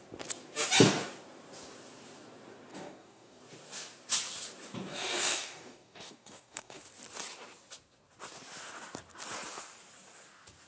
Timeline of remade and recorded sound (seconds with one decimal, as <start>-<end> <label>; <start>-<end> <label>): 0.0-2.7 recorded; 2.7-3.4 remade; 3.4-4.9 recorded; 4.9-6.8 remade; 6.8-10.7 recorded